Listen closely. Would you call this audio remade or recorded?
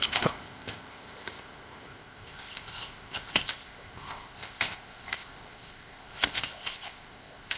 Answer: remade